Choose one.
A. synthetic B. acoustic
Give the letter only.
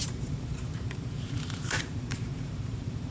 A